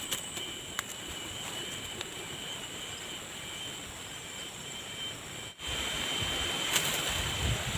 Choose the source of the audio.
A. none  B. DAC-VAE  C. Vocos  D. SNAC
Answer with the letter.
A